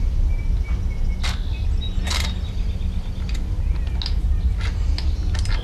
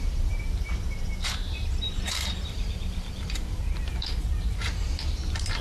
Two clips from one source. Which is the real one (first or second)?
first